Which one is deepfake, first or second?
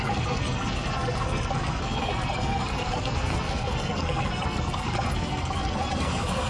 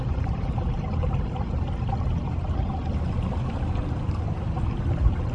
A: first